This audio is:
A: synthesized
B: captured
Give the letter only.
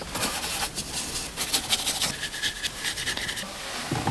B